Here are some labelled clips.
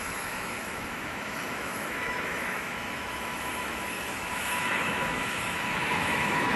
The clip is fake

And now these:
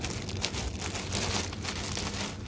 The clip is real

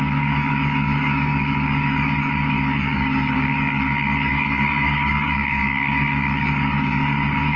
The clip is fake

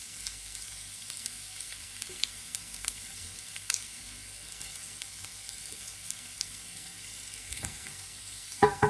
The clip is fake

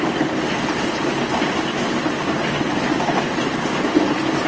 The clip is real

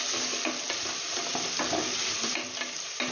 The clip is real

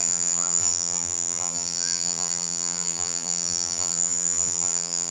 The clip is fake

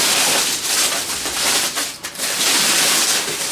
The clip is real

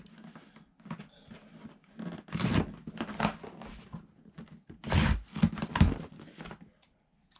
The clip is real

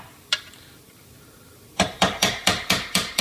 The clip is fake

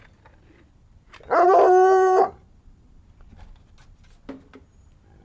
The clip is real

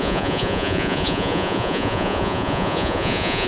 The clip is fake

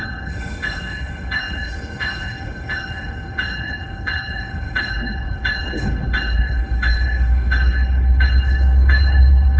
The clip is fake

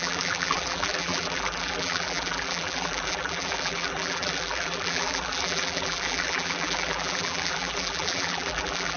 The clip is fake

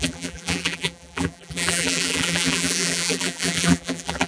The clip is fake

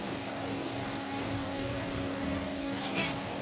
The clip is fake